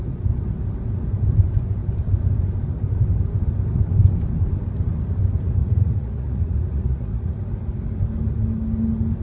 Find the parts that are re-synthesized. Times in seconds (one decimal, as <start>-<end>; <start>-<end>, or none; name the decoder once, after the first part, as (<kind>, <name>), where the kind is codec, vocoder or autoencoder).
5.6-7.4 (vocoder, Vocos)